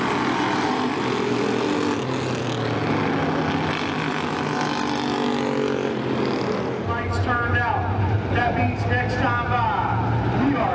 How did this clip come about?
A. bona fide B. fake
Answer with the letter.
A